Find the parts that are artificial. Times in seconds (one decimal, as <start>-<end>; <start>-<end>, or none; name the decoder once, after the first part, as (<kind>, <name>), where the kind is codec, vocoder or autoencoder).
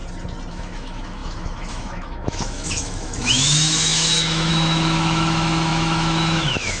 0.5-6.8 (autoencoder, DAC-VAE)